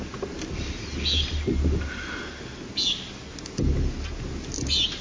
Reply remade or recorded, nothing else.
recorded